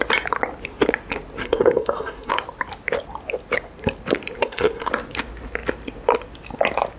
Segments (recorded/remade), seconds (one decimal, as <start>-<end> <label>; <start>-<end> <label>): 0.0-1.4 recorded; 1.4-2.3 remade; 2.3-4.4 recorded; 4.4-4.9 remade; 4.9-7.0 recorded